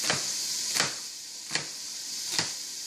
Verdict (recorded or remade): recorded